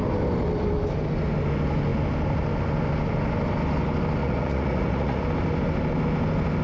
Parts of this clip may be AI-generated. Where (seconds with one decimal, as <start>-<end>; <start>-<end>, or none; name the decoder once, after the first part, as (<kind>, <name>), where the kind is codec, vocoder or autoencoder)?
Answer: 4.2-5.2 (vocoder, Vocos)